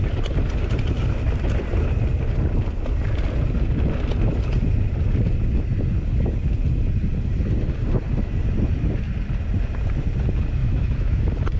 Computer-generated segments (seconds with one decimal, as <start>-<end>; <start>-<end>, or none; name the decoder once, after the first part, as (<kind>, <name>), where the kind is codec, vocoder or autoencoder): 10.6-11.2 (autoencoder, DAC-VAE)

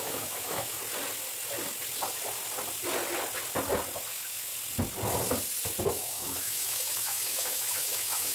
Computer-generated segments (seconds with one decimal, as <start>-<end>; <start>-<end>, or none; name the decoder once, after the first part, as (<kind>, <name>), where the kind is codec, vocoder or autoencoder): 0.0-0.8 (autoencoder, DAC-VAE); 4.1-4.5; 5.9-8.3

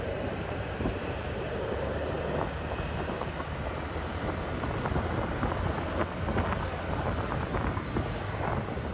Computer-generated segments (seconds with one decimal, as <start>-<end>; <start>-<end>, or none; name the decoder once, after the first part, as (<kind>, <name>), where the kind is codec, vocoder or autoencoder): 0.0-6.0 (vocoder, BigVGAN v2); 6.9-8.9

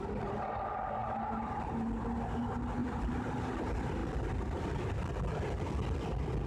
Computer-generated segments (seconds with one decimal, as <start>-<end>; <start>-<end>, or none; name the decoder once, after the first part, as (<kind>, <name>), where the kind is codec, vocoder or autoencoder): 1.0-2.0 (vocoder, BigVGAN v2); 2.8-3.4; 4.0-4.6

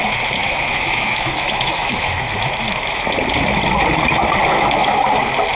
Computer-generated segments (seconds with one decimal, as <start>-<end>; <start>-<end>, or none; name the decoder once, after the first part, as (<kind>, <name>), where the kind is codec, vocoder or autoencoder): 0.4-3.1 (autoencoder, DAC-VAE); 4.5-5.1

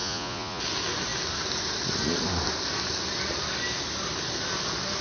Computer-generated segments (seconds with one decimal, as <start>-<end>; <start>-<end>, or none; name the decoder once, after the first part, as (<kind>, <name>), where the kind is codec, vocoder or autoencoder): 0.0-0.6 (vocoder, Vocos)

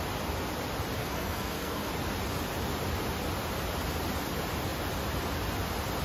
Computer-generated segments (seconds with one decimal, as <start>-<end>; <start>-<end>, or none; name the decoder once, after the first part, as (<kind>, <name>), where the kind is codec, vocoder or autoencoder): 1.0-1.9 (codec, SNAC)